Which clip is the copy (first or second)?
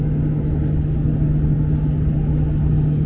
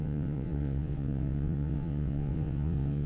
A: second